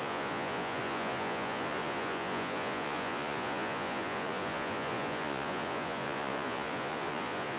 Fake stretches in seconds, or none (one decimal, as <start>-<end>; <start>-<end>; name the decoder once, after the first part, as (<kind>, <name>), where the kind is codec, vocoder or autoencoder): 0.0-7.6 (vocoder, Vocos)